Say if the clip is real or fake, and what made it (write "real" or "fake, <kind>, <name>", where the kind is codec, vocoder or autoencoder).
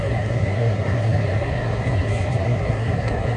fake, codec, SNAC